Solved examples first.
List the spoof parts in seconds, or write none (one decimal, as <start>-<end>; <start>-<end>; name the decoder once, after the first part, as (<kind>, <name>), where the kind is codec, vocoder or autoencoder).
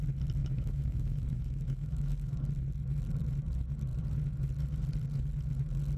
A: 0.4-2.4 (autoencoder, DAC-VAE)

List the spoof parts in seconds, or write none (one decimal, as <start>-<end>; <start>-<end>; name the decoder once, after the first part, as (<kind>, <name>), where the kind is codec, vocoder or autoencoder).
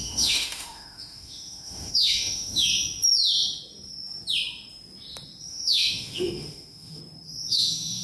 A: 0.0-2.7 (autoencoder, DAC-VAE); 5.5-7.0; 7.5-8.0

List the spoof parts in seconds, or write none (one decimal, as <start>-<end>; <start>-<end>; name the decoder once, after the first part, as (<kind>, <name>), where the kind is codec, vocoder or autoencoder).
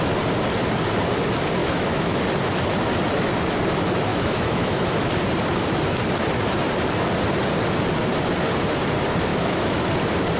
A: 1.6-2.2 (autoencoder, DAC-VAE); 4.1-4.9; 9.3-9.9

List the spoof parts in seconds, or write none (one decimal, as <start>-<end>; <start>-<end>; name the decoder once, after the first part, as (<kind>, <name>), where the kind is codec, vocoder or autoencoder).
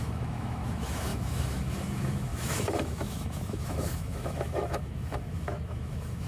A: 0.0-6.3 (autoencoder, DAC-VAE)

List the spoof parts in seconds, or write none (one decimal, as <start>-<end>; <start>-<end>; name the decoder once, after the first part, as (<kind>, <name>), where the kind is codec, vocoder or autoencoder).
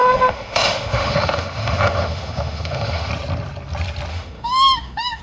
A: 0.0-3.1 (autoencoder, DAC-VAE); 4.1-5.2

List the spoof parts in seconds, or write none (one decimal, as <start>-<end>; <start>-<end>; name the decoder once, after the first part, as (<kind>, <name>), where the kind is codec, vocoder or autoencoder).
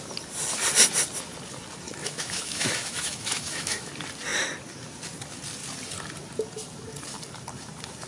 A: 2.0-3.9 (autoencoder, DAC-VAE)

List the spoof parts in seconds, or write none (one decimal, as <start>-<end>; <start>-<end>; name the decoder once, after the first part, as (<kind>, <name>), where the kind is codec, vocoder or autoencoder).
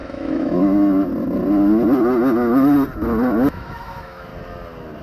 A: 0.0-1.1 (autoencoder, DAC-VAE); 3.5-4.3